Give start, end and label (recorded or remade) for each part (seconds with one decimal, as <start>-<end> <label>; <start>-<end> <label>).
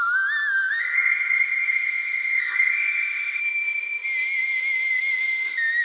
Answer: 0.0-0.8 recorded; 0.8-3.4 remade; 3.4-5.8 recorded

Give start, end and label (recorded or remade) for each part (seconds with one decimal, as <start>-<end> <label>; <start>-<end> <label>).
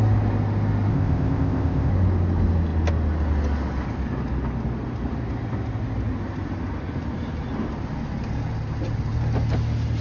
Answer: 0.0-0.9 recorded; 0.9-1.9 remade; 1.9-10.0 recorded